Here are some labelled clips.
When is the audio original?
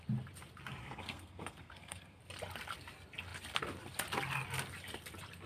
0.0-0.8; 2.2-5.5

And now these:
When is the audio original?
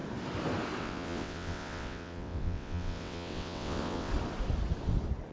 0.0-0.8; 4.1-5.3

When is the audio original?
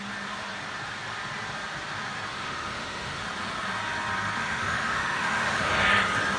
0.0-2.3; 3.2-4.4; 5.7-6.4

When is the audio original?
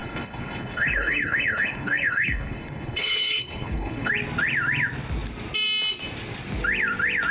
4.1-7.3